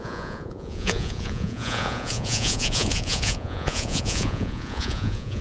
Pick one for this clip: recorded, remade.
remade